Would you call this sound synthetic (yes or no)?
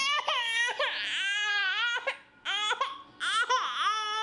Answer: no